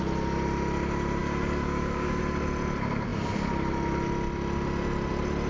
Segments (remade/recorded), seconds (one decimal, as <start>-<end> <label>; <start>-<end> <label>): 0.0-1.2 recorded; 1.2-2.2 remade; 2.2-5.5 recorded